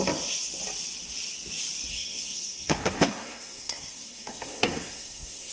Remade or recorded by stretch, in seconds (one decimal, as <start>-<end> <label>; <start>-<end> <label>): 0.0-1.9 recorded; 1.9-5.5 remade